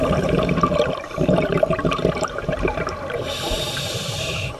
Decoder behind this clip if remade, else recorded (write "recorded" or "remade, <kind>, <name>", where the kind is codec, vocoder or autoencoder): remade, vocoder, BigVGAN v2